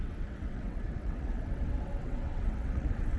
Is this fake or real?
fake